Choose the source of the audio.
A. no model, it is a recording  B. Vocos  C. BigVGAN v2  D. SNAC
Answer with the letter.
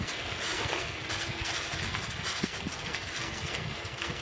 D